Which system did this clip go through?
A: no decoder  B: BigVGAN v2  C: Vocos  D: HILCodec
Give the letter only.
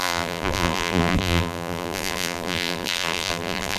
B